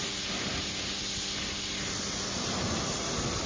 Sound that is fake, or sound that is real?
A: real